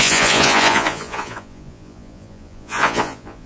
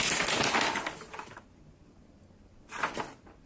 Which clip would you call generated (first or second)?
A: first